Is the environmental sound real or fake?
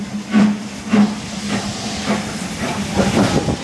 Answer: real